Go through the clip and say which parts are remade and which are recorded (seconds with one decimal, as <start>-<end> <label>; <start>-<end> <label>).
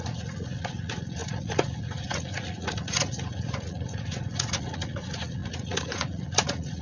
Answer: 0.0-6.8 remade